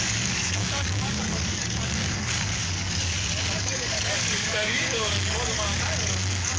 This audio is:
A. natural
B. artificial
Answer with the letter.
B